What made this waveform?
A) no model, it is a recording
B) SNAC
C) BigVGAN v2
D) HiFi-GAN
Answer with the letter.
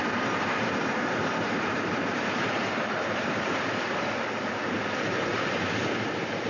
C